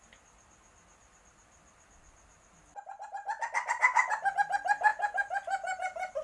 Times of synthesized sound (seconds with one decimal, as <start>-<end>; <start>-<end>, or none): none